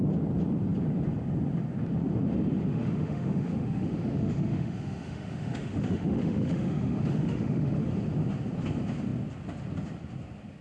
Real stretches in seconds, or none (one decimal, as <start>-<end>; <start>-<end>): 0.0-2.7; 7.9-10.6